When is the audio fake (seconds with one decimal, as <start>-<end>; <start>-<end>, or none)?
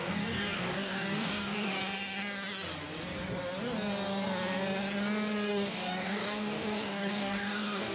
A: 0.0-1.8; 5.5-7.9